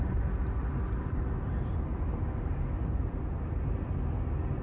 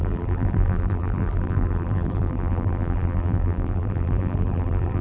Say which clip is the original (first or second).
first